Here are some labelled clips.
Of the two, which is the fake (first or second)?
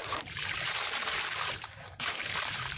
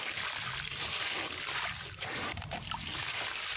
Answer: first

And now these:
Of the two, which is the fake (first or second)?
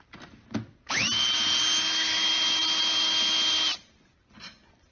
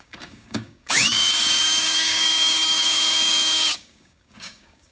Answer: second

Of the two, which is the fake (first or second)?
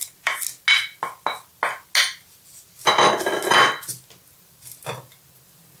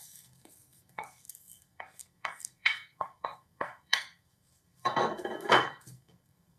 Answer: second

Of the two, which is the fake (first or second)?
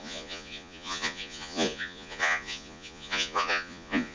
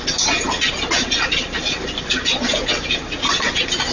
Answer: first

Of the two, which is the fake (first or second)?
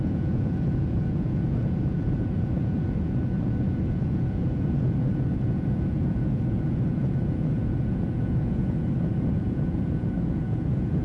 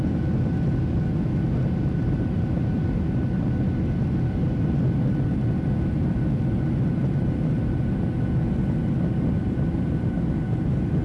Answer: first